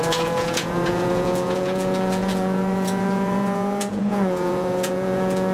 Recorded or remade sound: remade